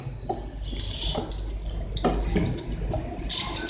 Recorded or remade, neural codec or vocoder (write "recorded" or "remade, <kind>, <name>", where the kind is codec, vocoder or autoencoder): recorded